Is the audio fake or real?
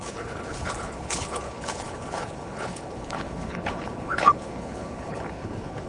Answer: fake